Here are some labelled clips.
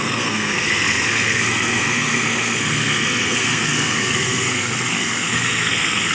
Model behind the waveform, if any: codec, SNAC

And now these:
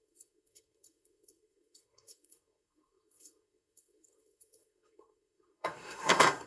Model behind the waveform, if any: codec, SNAC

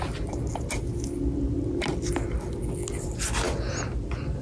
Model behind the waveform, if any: none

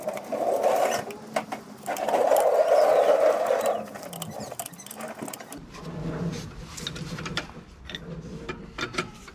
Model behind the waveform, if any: none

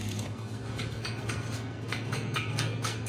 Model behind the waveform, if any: codec, SNAC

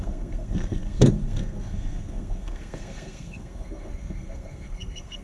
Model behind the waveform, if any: codec, SNAC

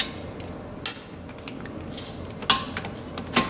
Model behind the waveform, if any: none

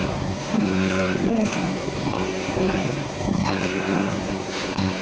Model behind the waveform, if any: codec, SNAC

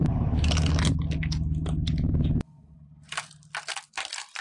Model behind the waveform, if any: none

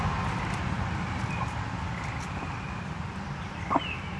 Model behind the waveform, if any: none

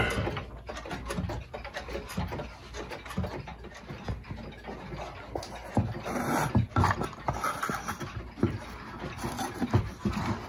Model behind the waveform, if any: none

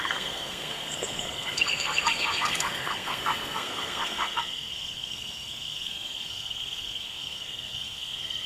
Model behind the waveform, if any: codec, SNAC